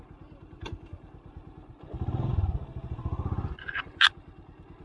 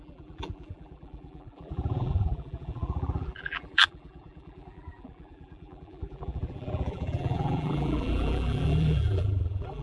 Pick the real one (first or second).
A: first